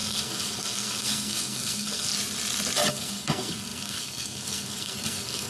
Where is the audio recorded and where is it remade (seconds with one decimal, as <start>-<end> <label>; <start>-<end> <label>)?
0.0-2.1 remade; 2.1-2.9 recorded; 2.9-5.5 remade